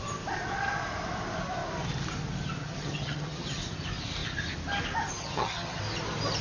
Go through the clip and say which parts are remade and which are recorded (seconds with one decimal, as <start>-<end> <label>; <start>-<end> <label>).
0.0-2.6 recorded; 2.6-3.6 remade; 3.6-5.2 recorded; 5.2-5.8 remade; 5.8-6.4 recorded

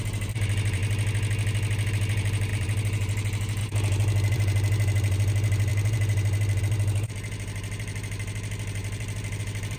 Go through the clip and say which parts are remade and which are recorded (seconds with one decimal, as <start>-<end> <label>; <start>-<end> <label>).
0.0-0.8 remade; 0.8-1.9 recorded; 1.9-9.8 remade